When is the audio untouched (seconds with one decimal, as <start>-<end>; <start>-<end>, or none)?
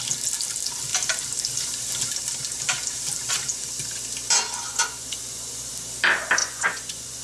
0.0-4.7; 5.7-6.4